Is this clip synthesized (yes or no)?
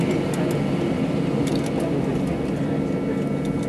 no